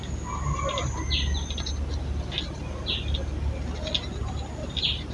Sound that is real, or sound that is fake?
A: real